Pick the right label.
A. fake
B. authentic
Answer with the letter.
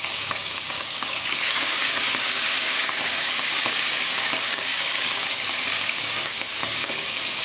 A